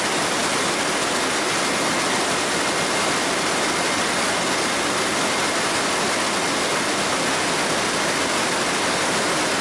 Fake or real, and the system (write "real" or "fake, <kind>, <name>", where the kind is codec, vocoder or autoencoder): real